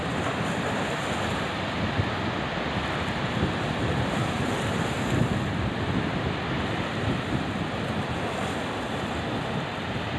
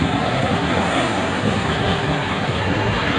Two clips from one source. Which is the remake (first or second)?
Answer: second